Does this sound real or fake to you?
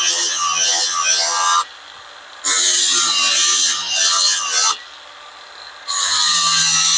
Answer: real